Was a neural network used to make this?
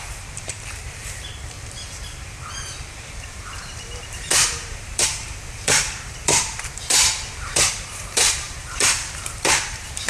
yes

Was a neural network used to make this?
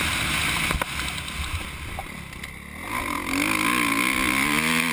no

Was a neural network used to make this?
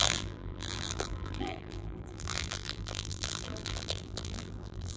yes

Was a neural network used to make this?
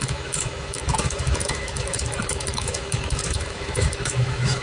yes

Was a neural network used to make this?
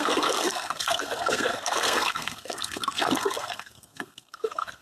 yes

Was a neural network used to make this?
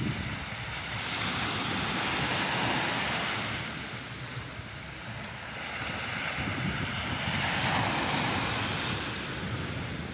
no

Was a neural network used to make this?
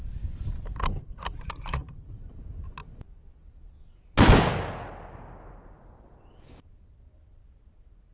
no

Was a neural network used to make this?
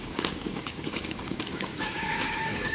yes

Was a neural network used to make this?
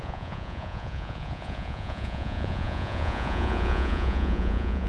yes